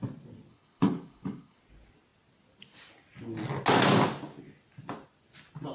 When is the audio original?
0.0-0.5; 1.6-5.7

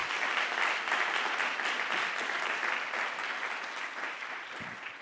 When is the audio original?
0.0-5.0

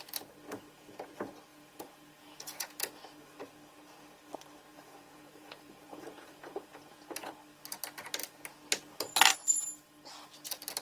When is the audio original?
0.0-1.5; 2.9-4.7; 7.3-10.8

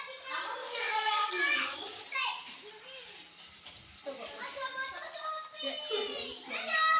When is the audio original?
0.0-0.6; 2.0-7.0

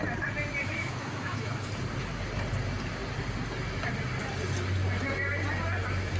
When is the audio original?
0.0-0.6; 1.7-6.2